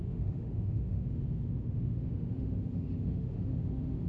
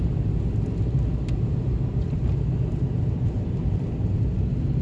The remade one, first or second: first